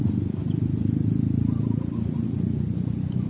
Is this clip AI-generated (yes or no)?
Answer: yes